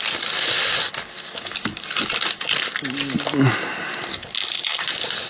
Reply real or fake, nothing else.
real